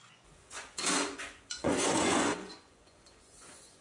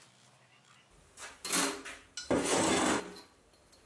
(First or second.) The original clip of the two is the second